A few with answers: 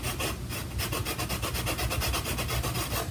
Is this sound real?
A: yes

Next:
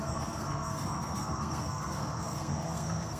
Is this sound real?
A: no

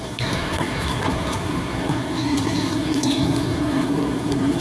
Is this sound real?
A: no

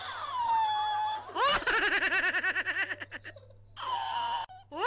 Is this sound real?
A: yes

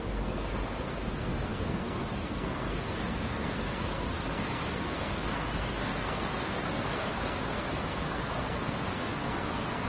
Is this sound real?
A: no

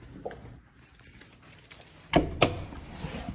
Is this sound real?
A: yes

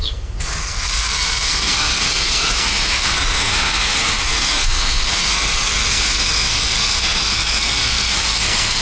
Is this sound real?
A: no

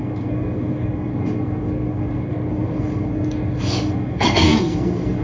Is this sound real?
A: no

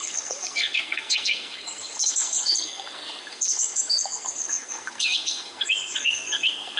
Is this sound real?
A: no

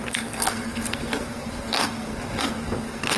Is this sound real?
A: no